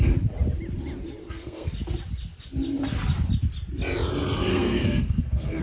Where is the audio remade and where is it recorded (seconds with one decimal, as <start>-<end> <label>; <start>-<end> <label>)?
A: 0.0-1.2 recorded; 1.2-1.7 remade; 1.7-4.5 recorded; 4.5-5.6 remade